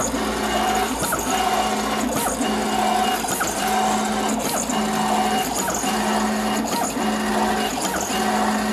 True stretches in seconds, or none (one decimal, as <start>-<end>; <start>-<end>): 0.0-8.7